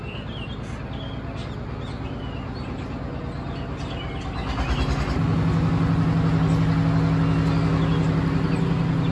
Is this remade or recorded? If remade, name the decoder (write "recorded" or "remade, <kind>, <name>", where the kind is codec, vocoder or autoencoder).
recorded